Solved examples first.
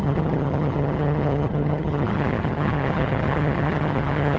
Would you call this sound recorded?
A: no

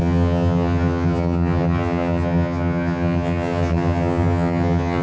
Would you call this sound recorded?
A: no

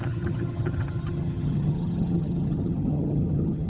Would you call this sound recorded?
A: no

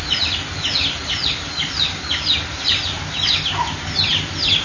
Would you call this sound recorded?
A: yes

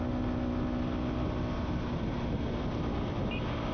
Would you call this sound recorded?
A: yes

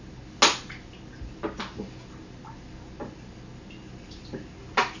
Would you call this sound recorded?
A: yes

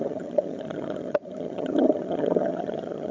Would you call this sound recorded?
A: no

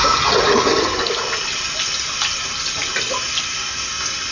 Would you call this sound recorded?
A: yes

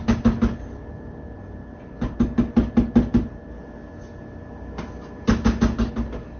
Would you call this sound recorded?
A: yes